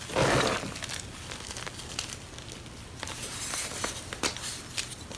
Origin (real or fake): real